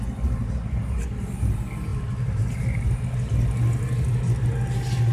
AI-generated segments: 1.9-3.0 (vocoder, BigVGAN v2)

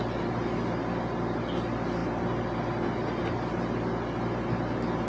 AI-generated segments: none

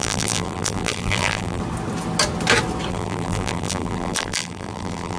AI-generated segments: 0.0-1.6 (vocoder, BigVGAN v2); 2.9-5.2

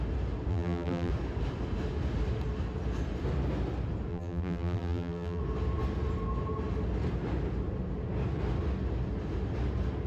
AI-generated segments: 0.5-1.1 (vocoder, BigVGAN v2); 4.1-5.4

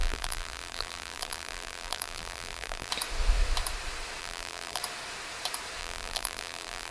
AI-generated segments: 0.0-2.9 (vocoder, BigVGAN v2); 4.2-4.8; 5.8-6.9

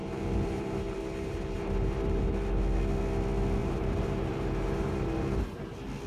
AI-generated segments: 0.0-2.3 (vocoder, BigVGAN v2); 3.6-5.4

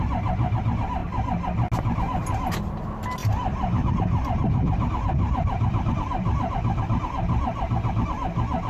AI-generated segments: 3.2-6.5 (vocoder, BigVGAN v2)